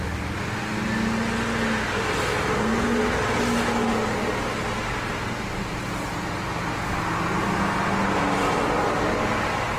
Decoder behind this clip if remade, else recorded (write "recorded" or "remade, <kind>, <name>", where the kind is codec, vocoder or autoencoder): recorded